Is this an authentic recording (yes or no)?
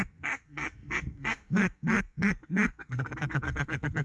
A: no